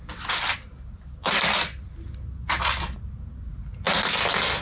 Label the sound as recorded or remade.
recorded